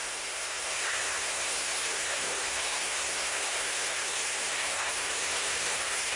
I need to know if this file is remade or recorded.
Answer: remade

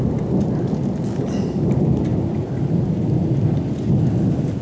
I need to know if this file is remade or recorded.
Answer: recorded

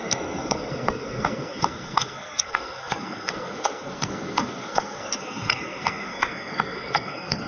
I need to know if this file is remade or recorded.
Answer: remade